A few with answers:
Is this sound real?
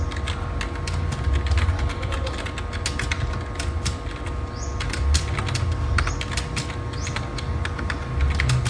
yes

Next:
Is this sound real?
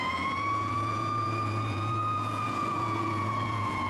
no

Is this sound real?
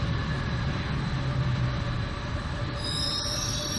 yes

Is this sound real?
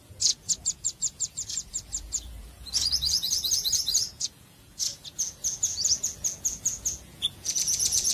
no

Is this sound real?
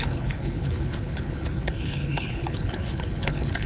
no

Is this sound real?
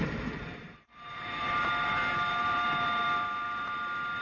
no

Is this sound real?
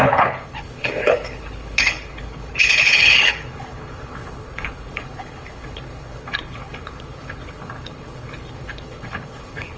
no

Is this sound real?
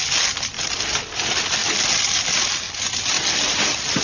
yes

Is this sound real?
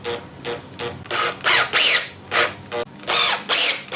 yes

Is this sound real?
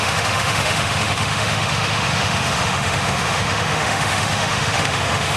no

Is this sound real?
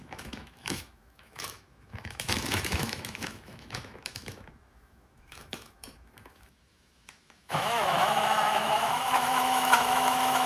no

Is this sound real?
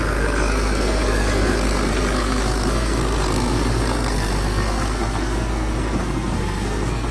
no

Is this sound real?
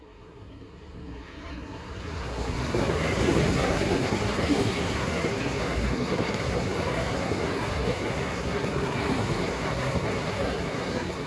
no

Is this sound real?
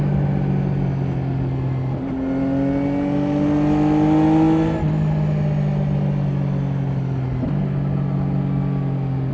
yes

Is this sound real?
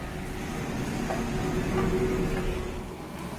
yes